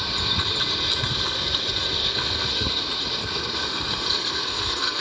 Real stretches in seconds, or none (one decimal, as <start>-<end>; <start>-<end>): 0.0-2.0; 2.7-3.2